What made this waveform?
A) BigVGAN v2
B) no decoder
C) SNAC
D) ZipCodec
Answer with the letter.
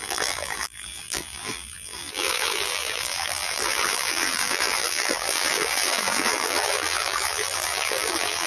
A